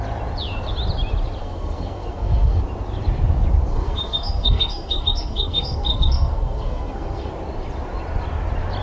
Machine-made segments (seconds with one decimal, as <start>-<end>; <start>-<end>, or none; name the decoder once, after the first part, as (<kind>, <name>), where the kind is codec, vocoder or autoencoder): 1.4-2.6 (codec, SNAC); 3.7-7.3